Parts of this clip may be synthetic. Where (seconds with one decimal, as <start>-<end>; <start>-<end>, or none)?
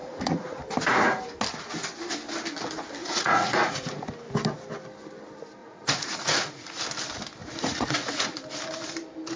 0.0-0.6; 3.0-4.1; 5.6-6.8; 7.4-8.4